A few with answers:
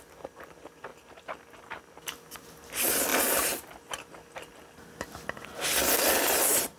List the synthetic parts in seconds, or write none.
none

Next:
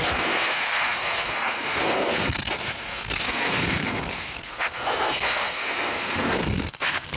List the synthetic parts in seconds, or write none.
0.0-7.2 (codec, SNAC)

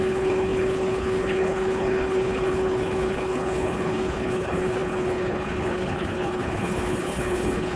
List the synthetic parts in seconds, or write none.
0.0-7.8 (codec, HILCodec)